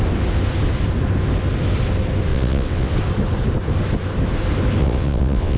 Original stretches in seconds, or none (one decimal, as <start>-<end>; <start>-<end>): 0.0-2.3; 2.9-4.8